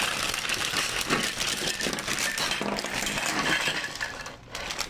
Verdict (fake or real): real